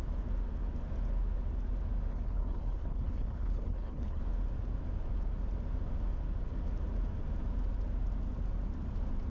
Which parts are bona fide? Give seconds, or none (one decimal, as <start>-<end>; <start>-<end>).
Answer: 0.0-2.1; 4.2-9.3